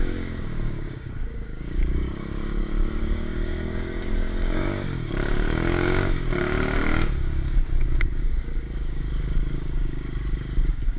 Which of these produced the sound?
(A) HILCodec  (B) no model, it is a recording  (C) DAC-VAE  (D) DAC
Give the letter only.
D